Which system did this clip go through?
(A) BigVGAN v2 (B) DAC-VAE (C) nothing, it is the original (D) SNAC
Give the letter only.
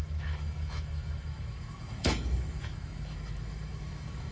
B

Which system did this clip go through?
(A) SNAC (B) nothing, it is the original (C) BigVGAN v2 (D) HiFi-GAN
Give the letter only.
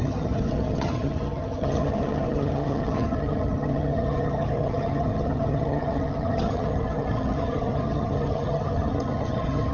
D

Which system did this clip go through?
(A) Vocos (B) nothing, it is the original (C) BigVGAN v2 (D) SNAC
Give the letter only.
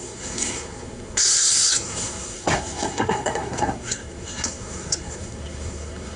D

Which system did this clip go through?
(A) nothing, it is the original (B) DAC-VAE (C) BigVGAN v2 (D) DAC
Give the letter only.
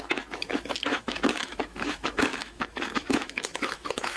B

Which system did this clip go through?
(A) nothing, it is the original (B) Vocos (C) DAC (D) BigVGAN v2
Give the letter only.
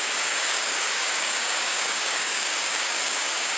C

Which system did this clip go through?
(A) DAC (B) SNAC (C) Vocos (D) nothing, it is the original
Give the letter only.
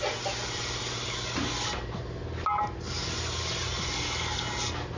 D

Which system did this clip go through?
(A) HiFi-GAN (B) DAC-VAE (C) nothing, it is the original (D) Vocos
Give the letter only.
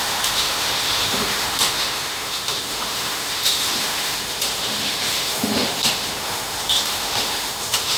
B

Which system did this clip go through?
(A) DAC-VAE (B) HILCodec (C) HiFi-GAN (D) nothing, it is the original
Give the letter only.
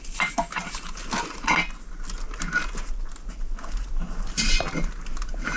D